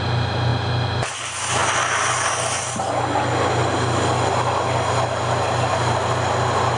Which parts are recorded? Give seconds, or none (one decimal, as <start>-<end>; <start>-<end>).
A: 0.0-6.8